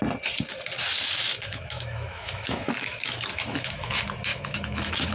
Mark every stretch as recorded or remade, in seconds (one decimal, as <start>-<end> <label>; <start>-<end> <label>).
0.0-1.3 recorded; 1.3-3.9 remade; 3.9-4.3 recorded; 4.3-5.1 remade